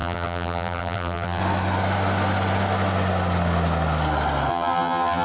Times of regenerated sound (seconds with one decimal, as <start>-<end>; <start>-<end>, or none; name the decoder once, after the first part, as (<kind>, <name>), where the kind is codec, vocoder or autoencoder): 0.0-1.4 (vocoder, BigVGAN v2); 4.5-5.2